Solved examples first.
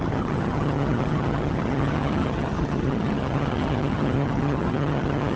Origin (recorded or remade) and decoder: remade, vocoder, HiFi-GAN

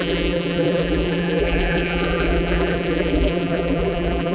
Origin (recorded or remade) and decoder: remade, vocoder, BigVGAN v2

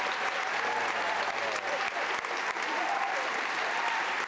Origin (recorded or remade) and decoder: recorded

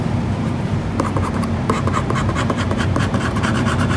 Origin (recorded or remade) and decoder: remade, vocoder, BigVGAN v2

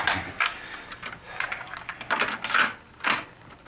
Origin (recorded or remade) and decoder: recorded